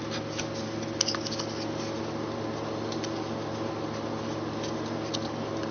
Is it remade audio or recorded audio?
recorded